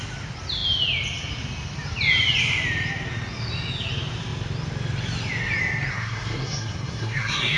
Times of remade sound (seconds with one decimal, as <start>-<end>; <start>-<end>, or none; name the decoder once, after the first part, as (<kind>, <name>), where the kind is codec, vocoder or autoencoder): 5.9-7.6 (codec, SNAC)